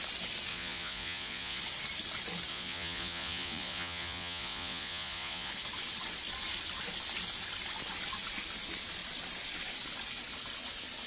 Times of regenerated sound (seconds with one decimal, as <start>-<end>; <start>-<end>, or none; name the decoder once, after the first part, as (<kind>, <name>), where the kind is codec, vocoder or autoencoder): 0.5-1.6 (vocoder, Vocos); 2.5-5.5